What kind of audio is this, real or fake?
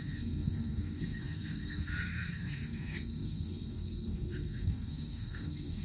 fake